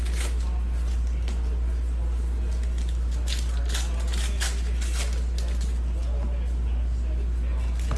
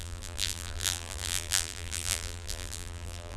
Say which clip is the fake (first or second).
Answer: second